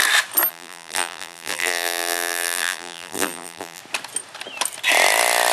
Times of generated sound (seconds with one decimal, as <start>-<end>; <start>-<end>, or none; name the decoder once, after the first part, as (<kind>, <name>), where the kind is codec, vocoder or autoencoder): 0.5-3.8 (vocoder, BigVGAN v2)